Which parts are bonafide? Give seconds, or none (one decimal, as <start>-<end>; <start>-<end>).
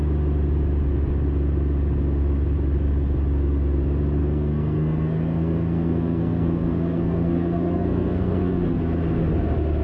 0.0-4.2; 8.8-9.8